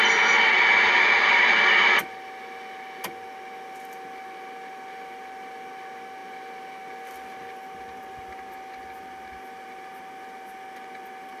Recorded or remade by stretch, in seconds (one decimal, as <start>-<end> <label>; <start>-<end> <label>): 0.0-11.4 recorded